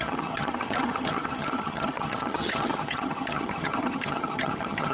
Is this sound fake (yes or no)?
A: yes